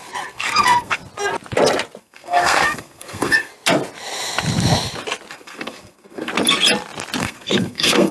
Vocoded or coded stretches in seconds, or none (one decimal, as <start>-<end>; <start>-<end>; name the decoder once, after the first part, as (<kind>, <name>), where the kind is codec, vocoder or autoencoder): 0.0-1.0 (codec, SNAC); 2.0-3.5; 5.3-6.3; 7.2-8.1